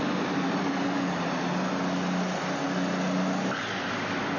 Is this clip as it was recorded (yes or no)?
yes